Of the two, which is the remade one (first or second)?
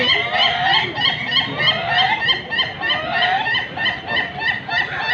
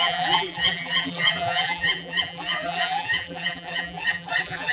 second